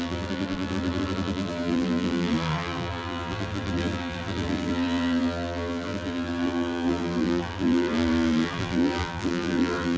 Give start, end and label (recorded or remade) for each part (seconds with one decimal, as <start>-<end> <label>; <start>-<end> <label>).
0.0-10.0 remade